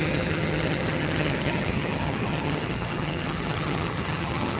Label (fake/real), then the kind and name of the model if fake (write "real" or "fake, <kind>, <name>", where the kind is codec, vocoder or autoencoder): fake, vocoder, HiFi-GAN